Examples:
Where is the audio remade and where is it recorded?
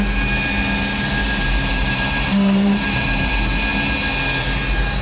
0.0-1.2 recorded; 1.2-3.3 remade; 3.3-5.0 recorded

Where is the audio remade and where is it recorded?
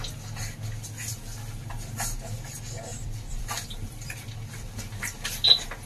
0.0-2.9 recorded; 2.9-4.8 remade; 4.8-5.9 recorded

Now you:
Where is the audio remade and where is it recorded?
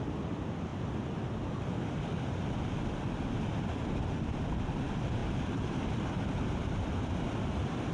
0.0-7.9 recorded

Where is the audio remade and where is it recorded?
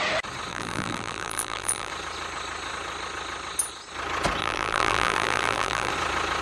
0.0-0.5 recorded; 0.5-1.9 remade; 1.9-4.4 recorded; 4.4-5.9 remade; 5.9-6.4 recorded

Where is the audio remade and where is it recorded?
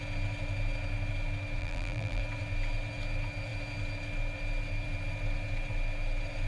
0.0-1.6 recorded; 1.6-2.2 remade; 2.2-6.5 recorded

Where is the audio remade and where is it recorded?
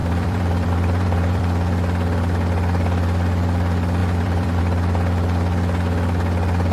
0.0-1.4 remade; 1.4-4.0 recorded; 4.0-4.6 remade; 4.6-6.7 recorded